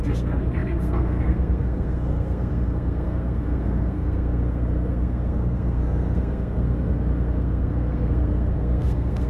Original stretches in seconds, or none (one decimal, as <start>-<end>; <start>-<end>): none